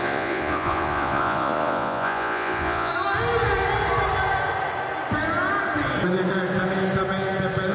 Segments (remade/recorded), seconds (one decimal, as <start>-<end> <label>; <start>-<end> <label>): 0.0-2.9 remade; 2.9-7.7 recorded